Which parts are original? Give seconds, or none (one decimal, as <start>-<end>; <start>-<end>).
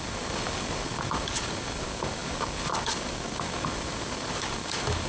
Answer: none